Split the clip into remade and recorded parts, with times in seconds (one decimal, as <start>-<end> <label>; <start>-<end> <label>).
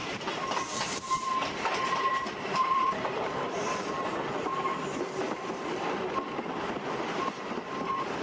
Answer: 0.0-3.9 remade; 3.9-4.5 recorded; 4.5-5.5 remade; 5.5-8.2 recorded